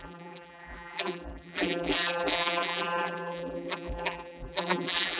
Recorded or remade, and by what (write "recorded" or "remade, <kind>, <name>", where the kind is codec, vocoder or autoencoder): remade, vocoder, BigVGAN v2